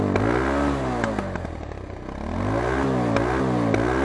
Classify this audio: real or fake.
real